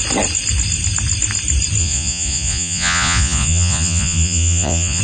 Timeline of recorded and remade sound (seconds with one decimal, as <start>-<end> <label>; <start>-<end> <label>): 0.0-1.8 recorded; 1.8-5.0 remade